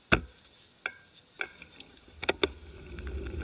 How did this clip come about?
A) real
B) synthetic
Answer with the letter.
A